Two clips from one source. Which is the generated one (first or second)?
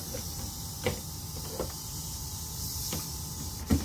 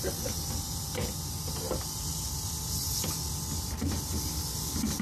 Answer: first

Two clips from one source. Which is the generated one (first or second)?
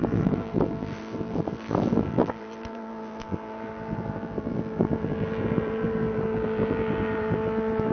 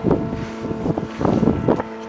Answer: first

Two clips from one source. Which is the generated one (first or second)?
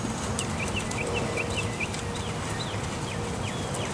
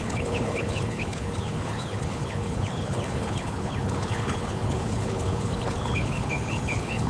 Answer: second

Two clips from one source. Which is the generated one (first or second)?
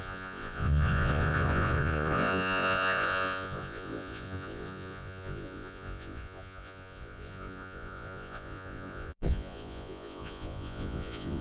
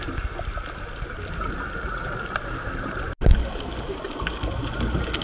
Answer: first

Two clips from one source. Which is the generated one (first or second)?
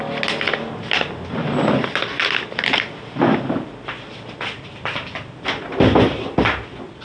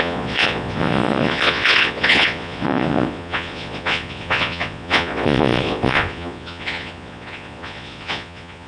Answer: second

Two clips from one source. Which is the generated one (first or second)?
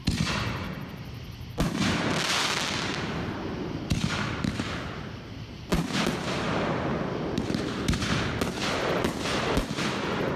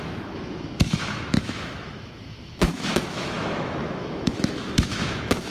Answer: second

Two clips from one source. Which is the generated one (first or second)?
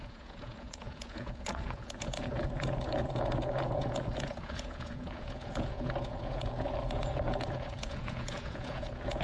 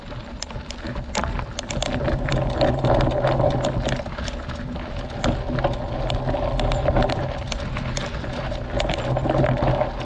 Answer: first